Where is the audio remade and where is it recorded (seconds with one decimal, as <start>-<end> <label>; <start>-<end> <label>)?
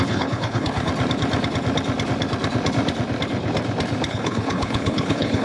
0.0-0.9 remade; 0.9-4.1 recorded; 4.1-5.4 remade